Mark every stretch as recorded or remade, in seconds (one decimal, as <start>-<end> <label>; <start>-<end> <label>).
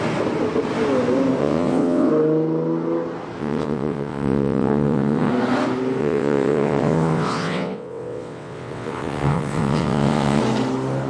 0.0-1.4 recorded; 1.4-2.1 remade; 2.1-3.4 recorded; 3.4-5.3 remade; 5.3-6.0 recorded; 6.0-10.4 remade; 10.4-11.1 recorded